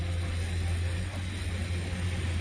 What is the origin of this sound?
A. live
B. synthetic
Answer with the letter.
A